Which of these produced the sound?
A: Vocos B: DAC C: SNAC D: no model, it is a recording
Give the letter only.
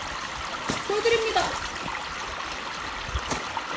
D